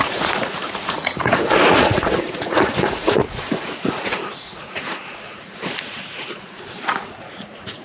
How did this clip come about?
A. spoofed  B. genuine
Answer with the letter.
A